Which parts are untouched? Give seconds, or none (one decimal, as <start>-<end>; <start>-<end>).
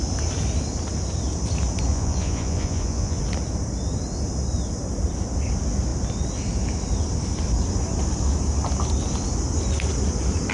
0.0-1.9; 3.2-10.5